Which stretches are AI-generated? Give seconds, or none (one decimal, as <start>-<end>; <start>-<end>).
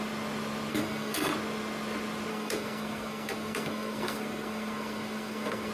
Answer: 0.7-1.3; 2.3-5.7